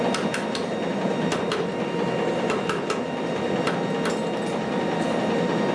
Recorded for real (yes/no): yes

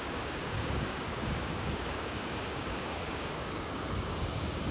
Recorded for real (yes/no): no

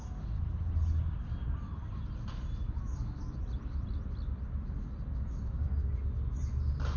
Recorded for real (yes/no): yes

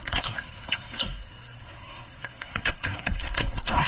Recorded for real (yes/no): no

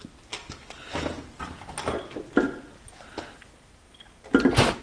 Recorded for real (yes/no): yes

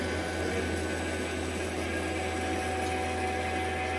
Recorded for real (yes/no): yes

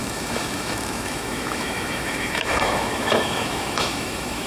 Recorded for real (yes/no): no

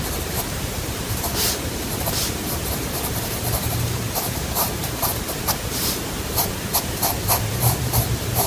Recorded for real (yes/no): no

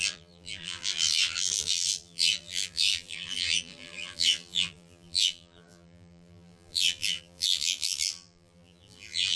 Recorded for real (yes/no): no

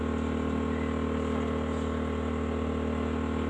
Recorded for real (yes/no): yes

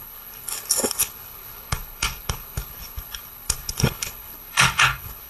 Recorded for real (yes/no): no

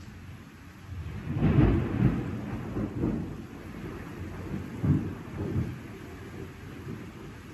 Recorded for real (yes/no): yes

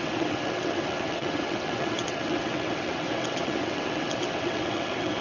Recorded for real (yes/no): no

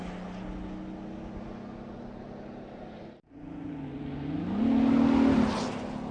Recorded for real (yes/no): yes